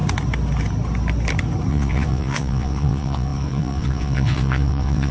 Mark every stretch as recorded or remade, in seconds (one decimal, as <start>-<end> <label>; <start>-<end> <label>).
0.0-1.7 recorded; 1.7-5.1 remade